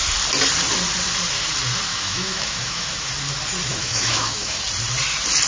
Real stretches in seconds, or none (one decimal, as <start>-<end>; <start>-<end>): 0.0-1.9; 3.1-3.7; 4.6-5.5